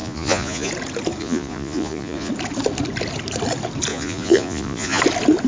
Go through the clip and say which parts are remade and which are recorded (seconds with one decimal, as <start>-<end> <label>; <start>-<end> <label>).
0.0-0.7 remade; 0.7-1.2 recorded; 1.2-2.3 remade; 2.3-3.9 recorded; 3.9-5.0 remade; 5.0-5.5 recorded